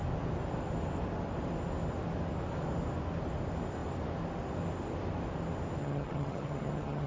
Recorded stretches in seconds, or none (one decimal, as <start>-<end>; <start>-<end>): 0.0-5.8